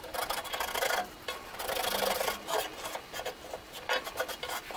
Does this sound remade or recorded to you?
recorded